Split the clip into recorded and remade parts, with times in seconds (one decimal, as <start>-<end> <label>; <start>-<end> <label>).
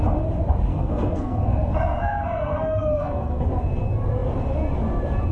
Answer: 0.0-0.7 recorded; 0.7-3.5 remade; 3.5-5.3 recorded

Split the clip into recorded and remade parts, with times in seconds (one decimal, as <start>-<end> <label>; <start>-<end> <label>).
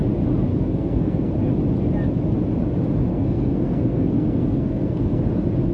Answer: 0.0-0.5 recorded; 0.5-1.3 remade; 1.3-3.1 recorded; 3.1-5.2 remade; 5.2-5.7 recorded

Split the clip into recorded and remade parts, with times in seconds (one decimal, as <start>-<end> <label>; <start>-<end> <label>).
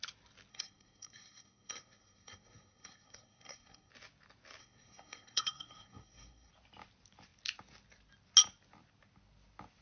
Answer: 0.0-0.5 recorded; 0.5-3.9 remade; 3.9-4.6 recorded; 4.6-6.5 remade; 6.5-9.8 recorded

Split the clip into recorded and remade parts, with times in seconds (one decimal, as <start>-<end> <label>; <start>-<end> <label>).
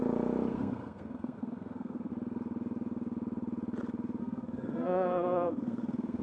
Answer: 0.0-0.5 recorded; 0.5-2.1 remade; 2.1-4.2 recorded; 4.2-6.2 remade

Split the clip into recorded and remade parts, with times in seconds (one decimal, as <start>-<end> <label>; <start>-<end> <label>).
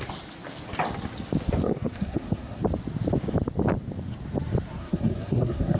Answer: 0.0-1.6 recorded; 1.6-2.6 remade; 2.6-4.8 recorded; 4.8-5.8 remade